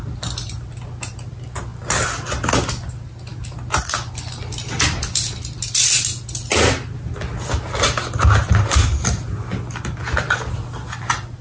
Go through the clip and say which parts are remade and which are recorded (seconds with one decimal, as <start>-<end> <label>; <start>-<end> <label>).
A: 0.0-11.4 recorded